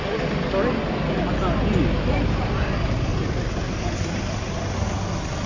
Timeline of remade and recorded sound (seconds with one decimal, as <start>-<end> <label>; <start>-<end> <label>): 0.0-3.1 recorded; 3.1-4.2 remade; 4.2-5.5 recorded